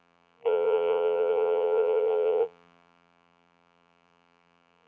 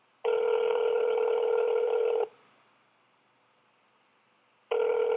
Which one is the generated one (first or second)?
first